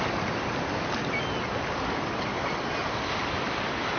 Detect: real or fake real